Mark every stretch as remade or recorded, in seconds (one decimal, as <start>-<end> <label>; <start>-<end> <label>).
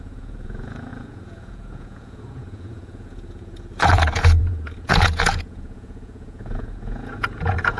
0.0-7.8 remade